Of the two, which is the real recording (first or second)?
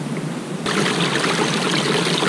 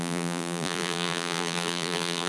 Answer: first